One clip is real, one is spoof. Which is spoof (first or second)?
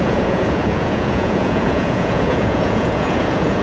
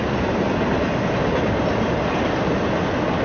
first